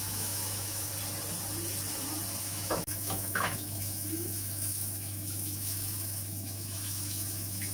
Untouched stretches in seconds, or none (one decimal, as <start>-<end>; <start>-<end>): 0.9-2.4